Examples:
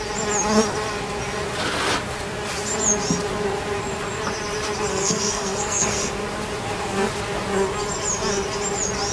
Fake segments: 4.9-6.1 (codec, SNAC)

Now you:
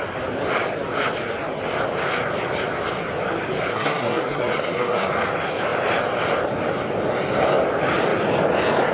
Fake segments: 3.7-5.1 (codec, SNAC)